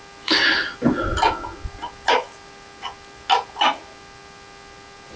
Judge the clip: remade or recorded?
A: recorded